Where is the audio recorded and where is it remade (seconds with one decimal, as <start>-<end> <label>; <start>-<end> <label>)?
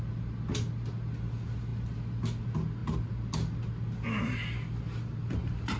0.0-5.8 recorded